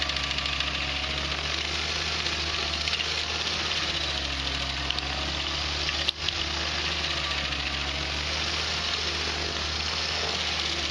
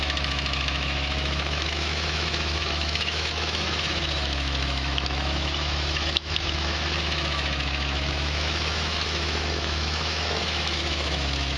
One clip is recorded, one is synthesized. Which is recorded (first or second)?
first